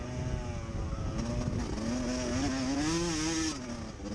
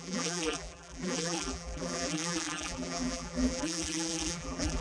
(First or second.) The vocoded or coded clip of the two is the second